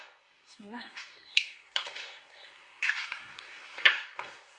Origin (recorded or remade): remade